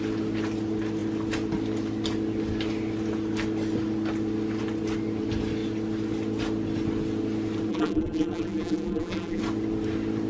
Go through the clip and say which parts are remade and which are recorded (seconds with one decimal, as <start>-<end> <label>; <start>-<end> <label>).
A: 0.0-7.7 recorded; 7.7-9.4 remade; 9.4-10.3 recorded